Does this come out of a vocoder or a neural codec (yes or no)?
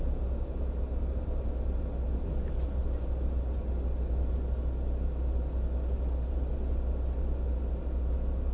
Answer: no